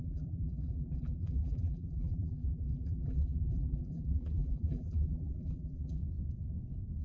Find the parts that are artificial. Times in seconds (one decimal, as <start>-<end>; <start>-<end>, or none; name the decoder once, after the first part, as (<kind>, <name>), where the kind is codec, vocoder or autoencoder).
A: 0.0-6.0 (vocoder, BigVGAN v2)